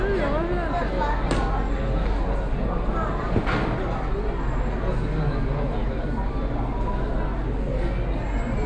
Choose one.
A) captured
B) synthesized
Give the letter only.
A